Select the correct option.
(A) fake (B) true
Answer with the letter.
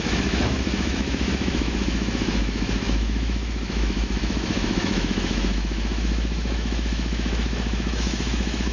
A